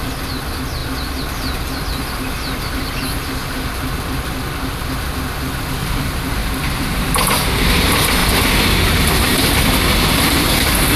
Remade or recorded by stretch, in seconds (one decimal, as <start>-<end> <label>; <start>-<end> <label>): 0.0-6.4 recorded; 6.4-6.9 remade; 6.9-11.0 recorded